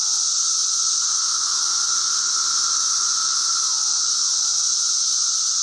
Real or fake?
real